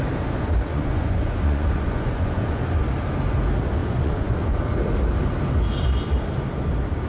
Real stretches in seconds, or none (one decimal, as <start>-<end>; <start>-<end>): 0.0-0.7; 2.6-3.8; 4.6-7.1